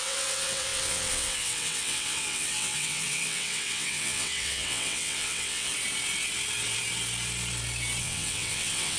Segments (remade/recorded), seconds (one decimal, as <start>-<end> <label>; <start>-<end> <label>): 0.0-5.7 remade; 5.7-8.0 recorded; 8.0-9.0 remade